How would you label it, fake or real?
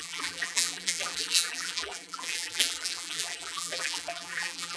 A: fake